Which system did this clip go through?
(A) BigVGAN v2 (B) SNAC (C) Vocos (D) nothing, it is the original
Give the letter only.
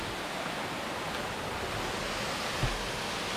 D